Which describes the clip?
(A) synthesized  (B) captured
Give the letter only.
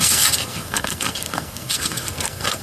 A